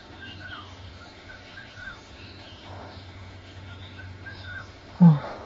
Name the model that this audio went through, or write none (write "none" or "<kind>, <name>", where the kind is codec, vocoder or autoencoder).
autoencoder, DAC-VAE